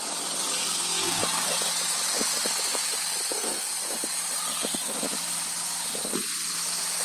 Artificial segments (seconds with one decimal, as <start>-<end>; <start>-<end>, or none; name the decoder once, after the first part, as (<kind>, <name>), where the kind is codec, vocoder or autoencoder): 0.6-1.2 (codec, SNAC); 3.2-3.7